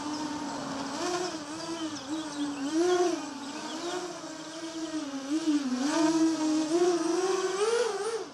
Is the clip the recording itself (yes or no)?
yes